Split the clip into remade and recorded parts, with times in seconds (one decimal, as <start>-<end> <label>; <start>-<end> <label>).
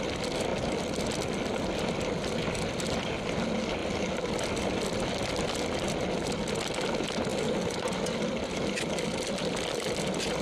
0.0-10.4 recorded